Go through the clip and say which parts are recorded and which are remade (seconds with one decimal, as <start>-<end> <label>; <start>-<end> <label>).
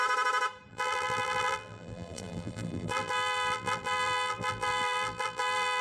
0.0-0.7 recorded; 0.7-5.8 remade